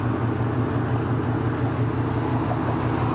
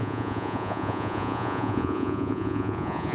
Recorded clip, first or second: first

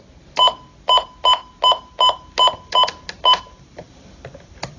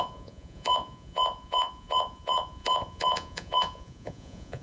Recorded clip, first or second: first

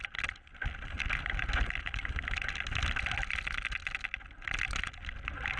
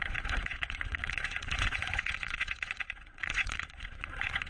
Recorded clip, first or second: first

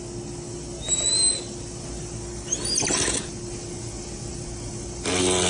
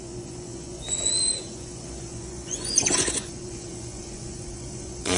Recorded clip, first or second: first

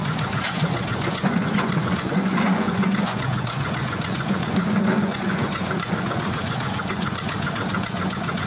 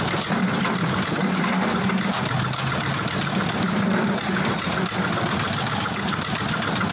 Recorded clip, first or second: second